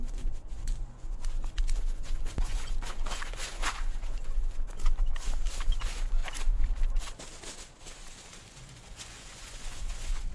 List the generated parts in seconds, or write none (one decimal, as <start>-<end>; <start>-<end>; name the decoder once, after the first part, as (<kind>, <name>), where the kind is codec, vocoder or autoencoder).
0.0-5.1 (vocoder, Vocos); 5.8-6.2; 8.4-10.3